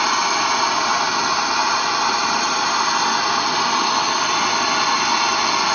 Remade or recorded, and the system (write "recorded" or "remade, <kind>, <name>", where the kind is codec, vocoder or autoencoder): recorded